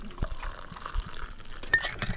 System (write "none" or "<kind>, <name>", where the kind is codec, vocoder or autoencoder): vocoder, BigVGAN v2